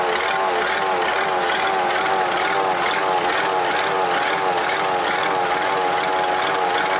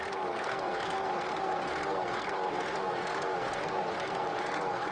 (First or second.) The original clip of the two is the first